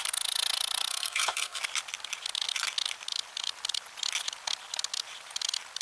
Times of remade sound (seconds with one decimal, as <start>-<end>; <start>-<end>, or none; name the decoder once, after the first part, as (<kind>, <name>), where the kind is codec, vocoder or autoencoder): 0.9-1.6 (codec, SNAC)